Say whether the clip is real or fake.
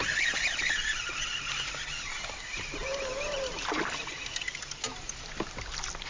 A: real